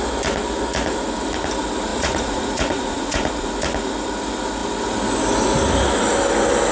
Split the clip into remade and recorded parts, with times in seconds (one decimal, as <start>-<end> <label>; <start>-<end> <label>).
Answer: 0.0-1.9 recorded; 1.9-3.5 remade; 3.5-6.7 recorded